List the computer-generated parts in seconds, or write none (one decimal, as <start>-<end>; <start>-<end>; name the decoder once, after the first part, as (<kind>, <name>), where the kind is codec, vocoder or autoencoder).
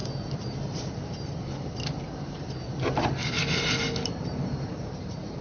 0.0-3.4 (vocoder, BigVGAN v2); 4.3-5.4